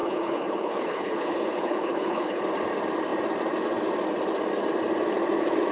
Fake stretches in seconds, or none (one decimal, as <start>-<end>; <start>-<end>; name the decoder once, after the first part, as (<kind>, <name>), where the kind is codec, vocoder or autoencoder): 0.0-2.4 (codec, HILCodec)